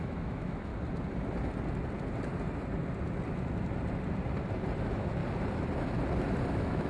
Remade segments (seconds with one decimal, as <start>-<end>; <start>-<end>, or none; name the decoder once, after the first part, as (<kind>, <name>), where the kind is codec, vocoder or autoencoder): 0.0-0.7 (autoencoder, DAC-VAE); 4.8-5.2; 6.5-6.9